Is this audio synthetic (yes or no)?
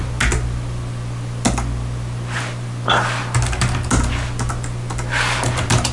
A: no